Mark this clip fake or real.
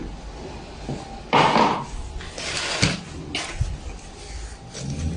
real